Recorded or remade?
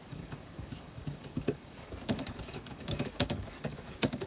remade